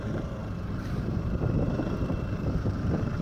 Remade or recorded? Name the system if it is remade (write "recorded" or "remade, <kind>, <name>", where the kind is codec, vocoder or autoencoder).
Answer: remade, vocoder, BigVGAN v2